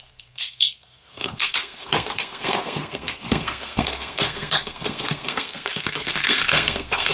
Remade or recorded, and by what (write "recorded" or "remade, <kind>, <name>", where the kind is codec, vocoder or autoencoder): remade, codec, SNAC